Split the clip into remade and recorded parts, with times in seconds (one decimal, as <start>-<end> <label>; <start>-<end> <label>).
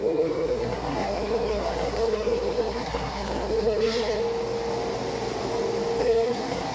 0.0-4.2 remade; 4.2-6.0 recorded; 6.0-6.7 remade